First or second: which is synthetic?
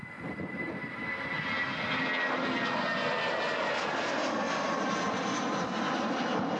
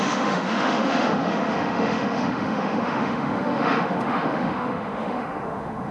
second